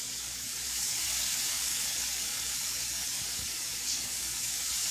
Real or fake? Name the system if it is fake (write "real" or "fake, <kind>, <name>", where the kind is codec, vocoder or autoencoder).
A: fake, codec, DAC